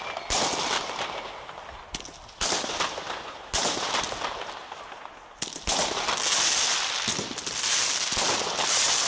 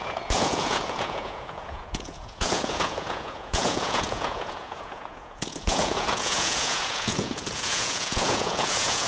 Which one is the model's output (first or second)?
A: second